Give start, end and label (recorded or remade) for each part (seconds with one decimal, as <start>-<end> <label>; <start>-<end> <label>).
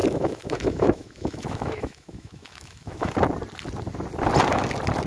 0.0-3.1 remade; 3.1-5.1 recorded